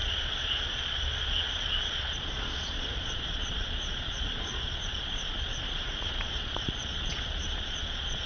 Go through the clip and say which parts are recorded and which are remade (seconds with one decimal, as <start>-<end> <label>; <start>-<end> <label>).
0.0-8.3 remade